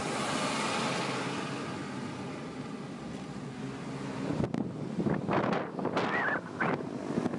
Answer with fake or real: real